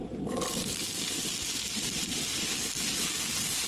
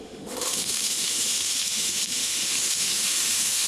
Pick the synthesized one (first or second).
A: second